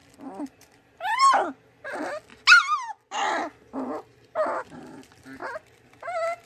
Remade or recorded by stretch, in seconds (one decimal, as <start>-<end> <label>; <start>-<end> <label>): 0.0-1.9 remade; 1.9-6.5 recorded